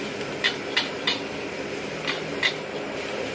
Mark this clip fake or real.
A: real